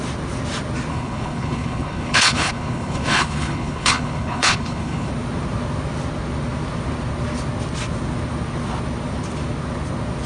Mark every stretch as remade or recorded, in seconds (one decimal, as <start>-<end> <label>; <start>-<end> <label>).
0.0-0.9 recorded; 0.9-5.1 remade; 5.1-10.3 recorded